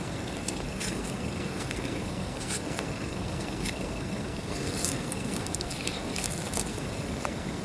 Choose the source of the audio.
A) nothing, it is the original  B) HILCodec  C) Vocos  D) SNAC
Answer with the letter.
D